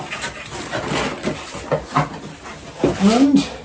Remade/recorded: recorded